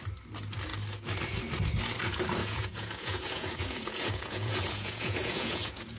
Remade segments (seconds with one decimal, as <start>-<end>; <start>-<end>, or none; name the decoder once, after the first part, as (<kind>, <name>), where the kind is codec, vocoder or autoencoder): 2.4-6.0 (vocoder, Vocos)